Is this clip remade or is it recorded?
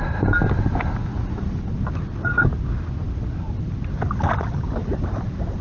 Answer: recorded